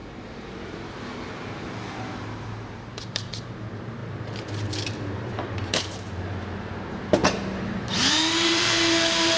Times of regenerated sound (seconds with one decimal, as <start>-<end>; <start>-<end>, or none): 0.0-9.4